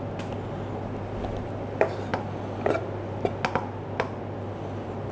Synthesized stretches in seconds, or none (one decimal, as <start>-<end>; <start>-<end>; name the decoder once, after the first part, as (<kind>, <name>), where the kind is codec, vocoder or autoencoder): none